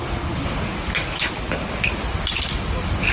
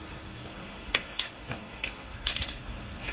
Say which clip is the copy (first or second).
second